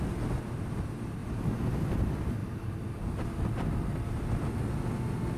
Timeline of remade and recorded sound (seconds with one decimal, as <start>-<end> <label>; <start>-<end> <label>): 0.0-5.4 recorded